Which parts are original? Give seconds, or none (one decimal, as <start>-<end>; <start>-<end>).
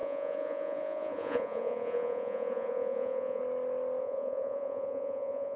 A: 3.4-4.0